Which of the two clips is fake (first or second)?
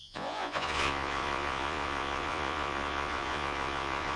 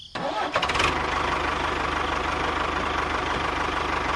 first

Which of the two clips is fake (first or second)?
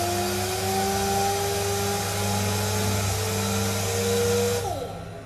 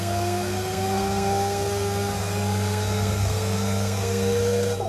second